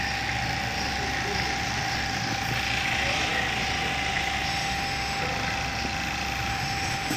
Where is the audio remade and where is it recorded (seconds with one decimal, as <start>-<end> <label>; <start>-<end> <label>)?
0.0-4.5 recorded; 4.5-5.2 remade; 5.2-6.5 recorded; 6.5-7.2 remade